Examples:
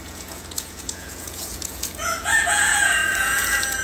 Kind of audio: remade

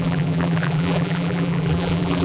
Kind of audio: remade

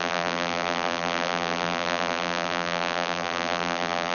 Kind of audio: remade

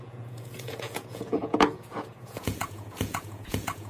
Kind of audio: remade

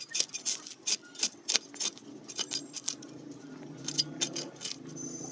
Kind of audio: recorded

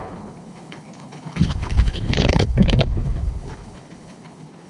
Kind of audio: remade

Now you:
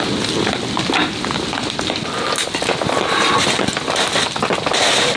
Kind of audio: recorded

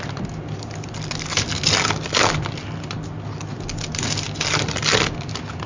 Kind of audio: recorded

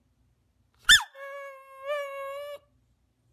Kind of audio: recorded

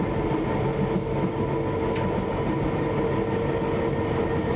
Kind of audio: recorded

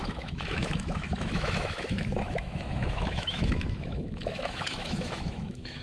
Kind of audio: remade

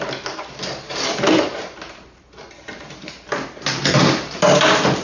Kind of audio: recorded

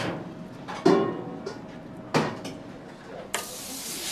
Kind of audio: recorded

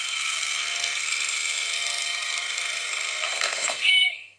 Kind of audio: remade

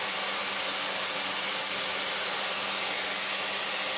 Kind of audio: recorded